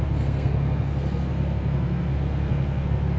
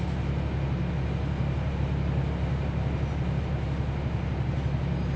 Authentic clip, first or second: second